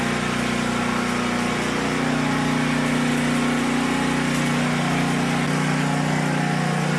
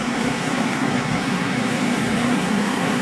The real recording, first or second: first